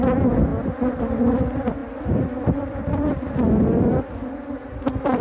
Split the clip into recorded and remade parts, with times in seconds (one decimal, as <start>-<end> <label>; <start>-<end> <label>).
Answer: 0.0-1.8 recorded; 1.8-4.0 remade; 4.0-5.2 recorded